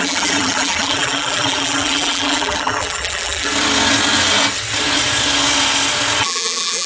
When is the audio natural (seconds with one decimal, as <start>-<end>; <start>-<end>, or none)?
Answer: 3.5-6.2